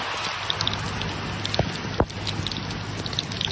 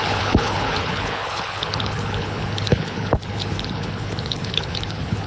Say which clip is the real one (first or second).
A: first